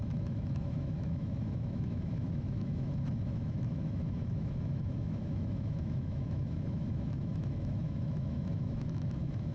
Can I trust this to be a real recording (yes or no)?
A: no